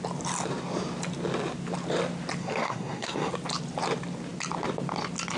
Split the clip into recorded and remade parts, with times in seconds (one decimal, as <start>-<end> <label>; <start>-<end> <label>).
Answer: 0.0-2.4 recorded; 2.4-3.3 remade; 3.3-5.4 recorded